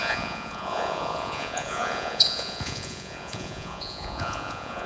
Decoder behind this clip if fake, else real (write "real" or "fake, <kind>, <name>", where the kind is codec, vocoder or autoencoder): fake, vocoder, Vocos